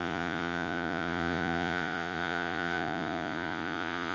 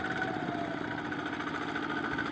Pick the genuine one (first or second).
second